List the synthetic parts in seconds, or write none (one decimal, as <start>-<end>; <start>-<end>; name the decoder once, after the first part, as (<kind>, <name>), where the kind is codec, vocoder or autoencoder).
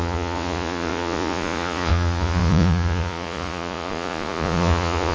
0.0-5.1 (vocoder, Vocos)